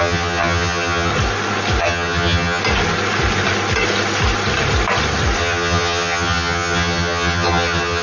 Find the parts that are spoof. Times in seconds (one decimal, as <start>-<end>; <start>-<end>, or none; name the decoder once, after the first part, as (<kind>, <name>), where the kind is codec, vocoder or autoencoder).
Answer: 0.0-1.1 (vocoder, HiFi-GAN); 1.8-2.6; 5.4-8.0